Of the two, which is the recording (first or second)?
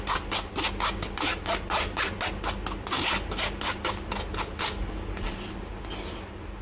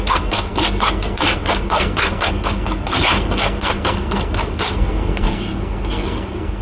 first